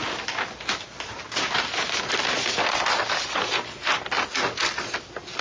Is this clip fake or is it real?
real